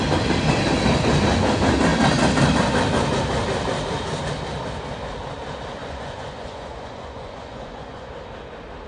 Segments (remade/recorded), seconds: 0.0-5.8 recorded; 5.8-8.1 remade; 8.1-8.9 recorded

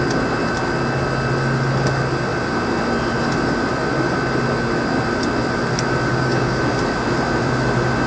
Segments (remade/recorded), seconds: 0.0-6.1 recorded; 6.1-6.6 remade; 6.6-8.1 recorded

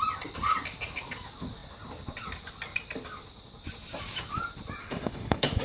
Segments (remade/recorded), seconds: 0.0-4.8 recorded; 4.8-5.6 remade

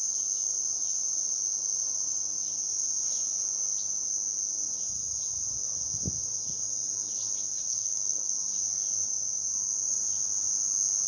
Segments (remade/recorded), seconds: 0.0-7.7 recorded; 7.7-8.3 remade; 8.3-11.1 recorded

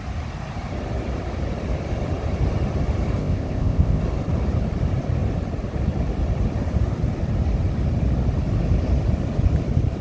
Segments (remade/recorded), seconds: 0.0-3.2 recorded; 3.2-4.0 remade; 4.0-10.0 recorded